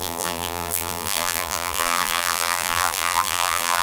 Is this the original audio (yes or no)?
no